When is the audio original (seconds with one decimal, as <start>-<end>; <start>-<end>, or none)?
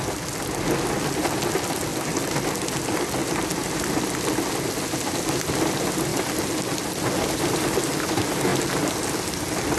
0.0-9.8